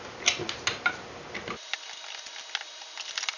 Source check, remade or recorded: recorded